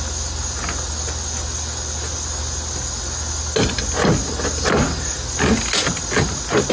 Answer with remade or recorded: recorded